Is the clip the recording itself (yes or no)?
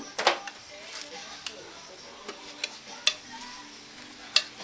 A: yes